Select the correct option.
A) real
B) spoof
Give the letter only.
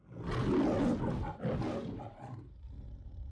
A